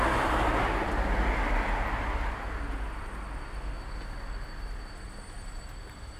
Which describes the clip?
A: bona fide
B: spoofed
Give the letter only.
A